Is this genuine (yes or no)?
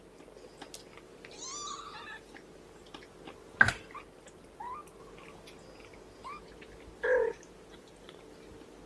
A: yes